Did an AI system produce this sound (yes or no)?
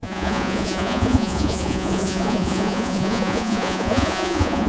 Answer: yes